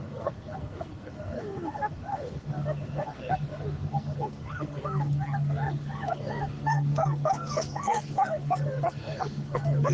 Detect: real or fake fake